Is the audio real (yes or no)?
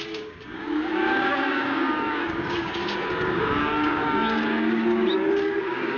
no